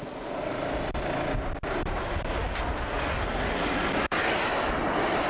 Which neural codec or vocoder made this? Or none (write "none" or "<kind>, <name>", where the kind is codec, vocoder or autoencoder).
none